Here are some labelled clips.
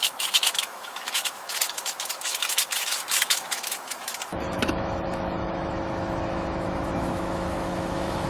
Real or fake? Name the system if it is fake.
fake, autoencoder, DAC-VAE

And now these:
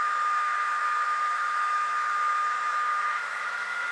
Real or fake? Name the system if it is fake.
fake, autoencoder, DAC-VAE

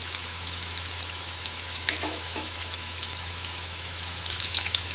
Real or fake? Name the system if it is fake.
fake, autoencoder, DAC-VAE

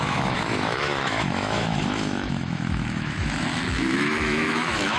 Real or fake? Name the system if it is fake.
fake, autoencoder, DAC-VAE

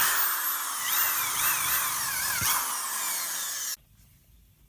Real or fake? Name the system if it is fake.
real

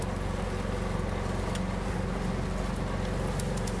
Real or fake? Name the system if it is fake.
real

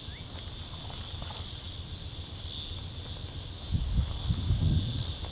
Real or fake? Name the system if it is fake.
real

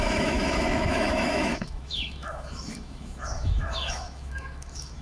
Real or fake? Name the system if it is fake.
fake, autoencoder, DAC-VAE